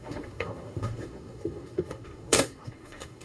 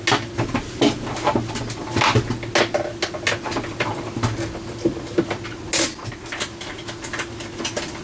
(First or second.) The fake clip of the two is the first